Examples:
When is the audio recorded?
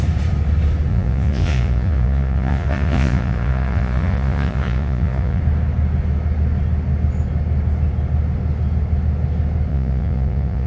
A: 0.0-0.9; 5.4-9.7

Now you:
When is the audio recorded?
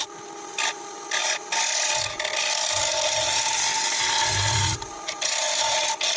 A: 0.0-6.2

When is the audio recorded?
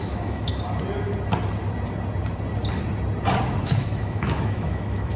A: 0.5-3.6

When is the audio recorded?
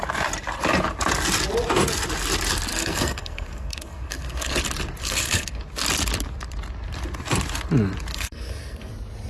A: 0.0-2.7; 4.6-5.0; 5.6-8.1; 8.9-9.3